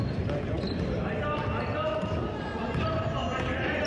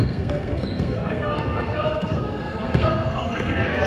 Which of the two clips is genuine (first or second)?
first